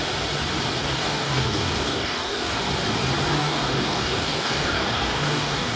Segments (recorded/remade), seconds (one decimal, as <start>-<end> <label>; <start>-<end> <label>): 0.0-0.8 recorded; 0.8-2.6 remade; 2.6-3.4 recorded; 3.4-5.8 remade